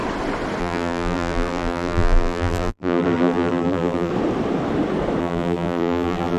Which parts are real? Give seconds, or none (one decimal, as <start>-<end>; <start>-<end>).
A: 0.0-0.6; 4.1-5.2